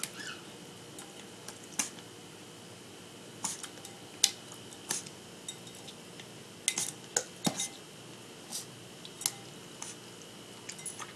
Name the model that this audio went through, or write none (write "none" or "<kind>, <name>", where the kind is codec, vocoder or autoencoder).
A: none